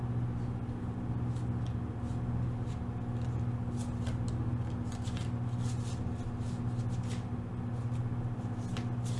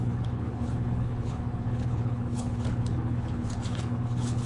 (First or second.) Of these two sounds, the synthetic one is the second